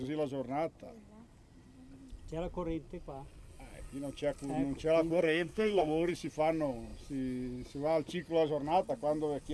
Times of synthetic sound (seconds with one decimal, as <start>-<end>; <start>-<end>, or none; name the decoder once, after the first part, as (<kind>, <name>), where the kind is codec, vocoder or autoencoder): 5.1-6.1 (codec, SNAC)